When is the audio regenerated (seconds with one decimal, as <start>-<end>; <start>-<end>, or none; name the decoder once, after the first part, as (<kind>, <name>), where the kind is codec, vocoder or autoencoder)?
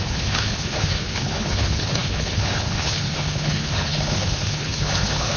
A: 0.0-5.4 (codec, HILCodec)